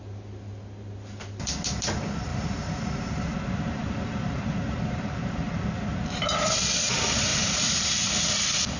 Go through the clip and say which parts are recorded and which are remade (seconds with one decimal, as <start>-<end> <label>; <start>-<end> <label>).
0.0-2.3 recorded; 2.3-6.6 remade; 6.6-7.3 recorded; 7.3-8.0 remade; 8.0-8.8 recorded

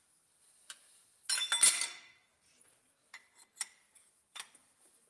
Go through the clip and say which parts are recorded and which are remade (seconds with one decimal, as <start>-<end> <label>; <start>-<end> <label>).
0.0-5.1 recorded

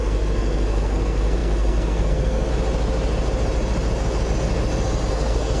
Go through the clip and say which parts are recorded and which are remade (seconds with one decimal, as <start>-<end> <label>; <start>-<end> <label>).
0.0-2.5 remade; 2.5-5.1 recorded; 5.1-5.6 remade

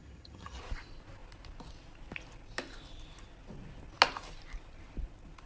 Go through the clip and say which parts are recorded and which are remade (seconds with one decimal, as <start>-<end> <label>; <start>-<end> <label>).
0.0-0.6 remade; 0.6-5.5 recorded

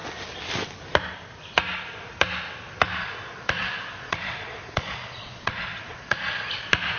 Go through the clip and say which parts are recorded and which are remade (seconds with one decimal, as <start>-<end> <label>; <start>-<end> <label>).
0.0-3.0 recorded; 3.0-6.5 remade; 6.5-7.0 recorded